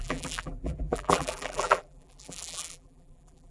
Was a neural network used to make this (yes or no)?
yes